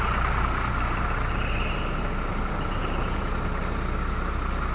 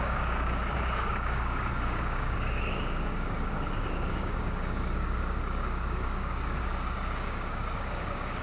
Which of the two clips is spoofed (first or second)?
second